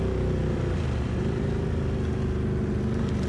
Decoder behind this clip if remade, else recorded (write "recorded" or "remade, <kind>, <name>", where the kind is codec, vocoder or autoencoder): recorded